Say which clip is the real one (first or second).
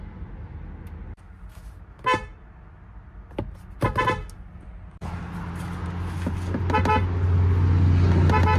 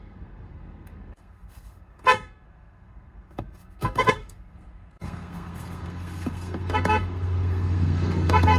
first